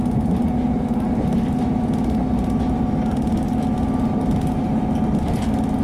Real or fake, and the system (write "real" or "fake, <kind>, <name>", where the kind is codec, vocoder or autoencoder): real